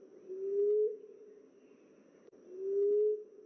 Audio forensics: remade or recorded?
recorded